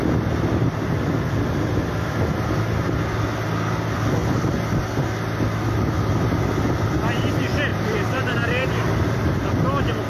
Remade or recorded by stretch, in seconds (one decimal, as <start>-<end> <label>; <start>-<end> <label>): 0.0-7.7 recorded; 7.7-8.8 remade; 8.8-10.1 recorded